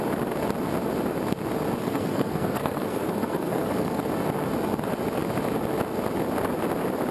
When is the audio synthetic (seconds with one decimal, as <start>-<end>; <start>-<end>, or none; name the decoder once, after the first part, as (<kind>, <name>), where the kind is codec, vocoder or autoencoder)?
1.8-4.0 (codec, SNAC)